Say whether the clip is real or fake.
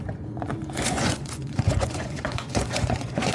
fake